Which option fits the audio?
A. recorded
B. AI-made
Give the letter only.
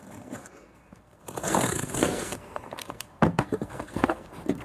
B